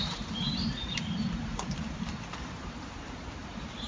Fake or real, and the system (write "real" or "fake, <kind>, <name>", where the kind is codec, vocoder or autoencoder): fake, vocoder, BigVGAN v2